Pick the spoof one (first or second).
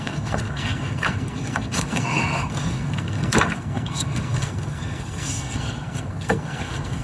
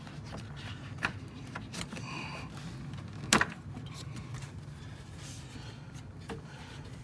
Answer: first